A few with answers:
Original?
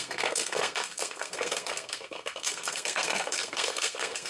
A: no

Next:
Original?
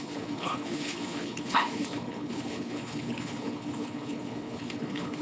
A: no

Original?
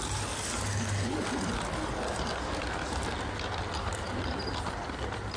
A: yes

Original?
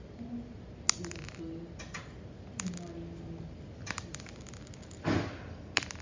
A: yes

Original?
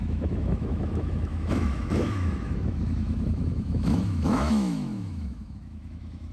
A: no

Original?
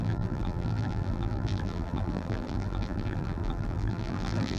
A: no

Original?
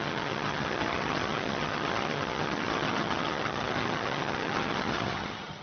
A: no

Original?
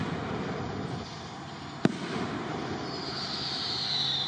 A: no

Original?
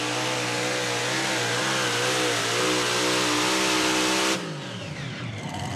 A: yes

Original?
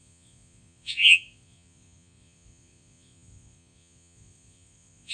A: no